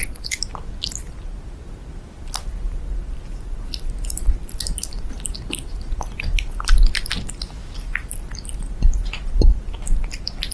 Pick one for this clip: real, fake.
real